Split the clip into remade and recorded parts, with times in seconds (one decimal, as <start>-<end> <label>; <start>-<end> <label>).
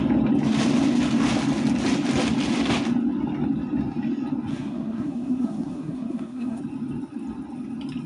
0.0-4.5 recorded; 4.5-6.6 remade; 6.6-8.1 recorded